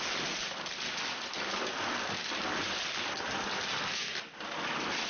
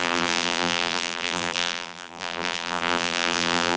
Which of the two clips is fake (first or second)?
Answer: second